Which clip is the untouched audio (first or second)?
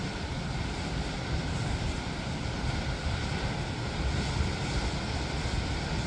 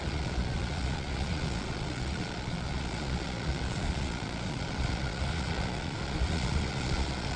first